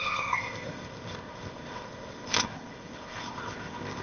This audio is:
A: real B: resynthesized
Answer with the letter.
B